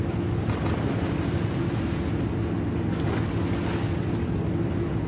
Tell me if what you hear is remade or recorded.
recorded